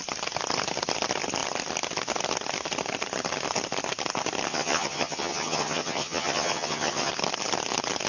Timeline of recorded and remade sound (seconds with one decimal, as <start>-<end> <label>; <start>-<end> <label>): 0.0-4.5 recorded; 4.5-7.1 remade; 7.1-8.1 recorded

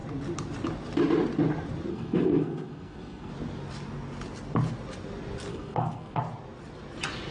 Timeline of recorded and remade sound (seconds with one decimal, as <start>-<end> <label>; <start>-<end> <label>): 0.0-1.9 recorded; 1.9-3.3 remade; 3.3-5.5 recorded; 5.5-6.2 remade; 6.2-7.3 recorded